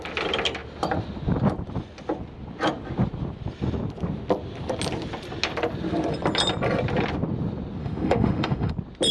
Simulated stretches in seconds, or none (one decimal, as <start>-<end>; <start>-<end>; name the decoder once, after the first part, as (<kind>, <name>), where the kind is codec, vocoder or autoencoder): 7.8-8.7 (autoencoder, DAC-VAE)